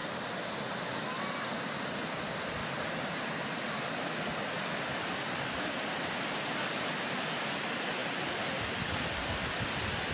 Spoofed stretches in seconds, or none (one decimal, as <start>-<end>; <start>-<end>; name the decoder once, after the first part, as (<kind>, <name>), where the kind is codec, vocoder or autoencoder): none